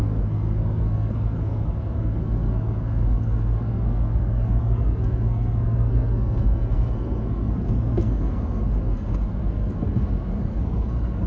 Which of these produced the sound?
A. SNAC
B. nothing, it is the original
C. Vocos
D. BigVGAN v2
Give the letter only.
A